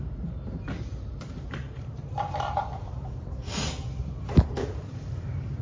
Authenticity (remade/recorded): remade